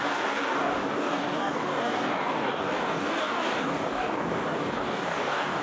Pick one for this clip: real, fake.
fake